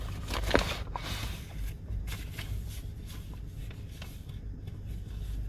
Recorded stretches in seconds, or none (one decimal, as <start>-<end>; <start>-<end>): 0.0-5.5